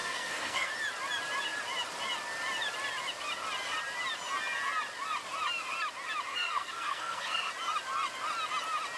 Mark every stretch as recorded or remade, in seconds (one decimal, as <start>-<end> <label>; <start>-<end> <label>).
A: 0.0-0.7 remade; 0.7-6.3 recorded; 6.3-7.5 remade; 7.5-9.0 recorded